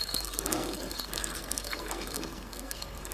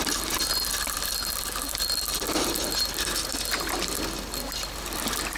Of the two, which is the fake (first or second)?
first